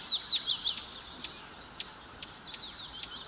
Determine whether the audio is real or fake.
real